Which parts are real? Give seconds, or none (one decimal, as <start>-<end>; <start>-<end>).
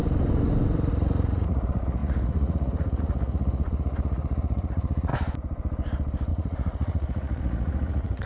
0.0-0.9; 5.1-6.3